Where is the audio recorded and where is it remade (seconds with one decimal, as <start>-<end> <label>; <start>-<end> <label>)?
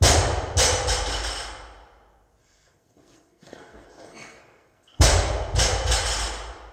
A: 0.0-2.4 recorded; 2.4-5.3 remade; 5.3-6.7 recorded